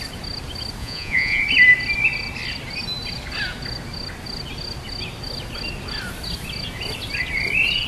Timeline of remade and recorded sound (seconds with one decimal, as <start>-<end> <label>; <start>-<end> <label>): 0.0-0.8 recorded; 0.8-1.4 remade; 1.4-7.9 recorded